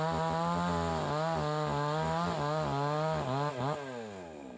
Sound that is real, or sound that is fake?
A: real